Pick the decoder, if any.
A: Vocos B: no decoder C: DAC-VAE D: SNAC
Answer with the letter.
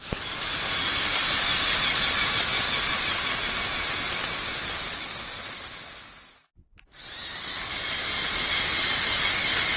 B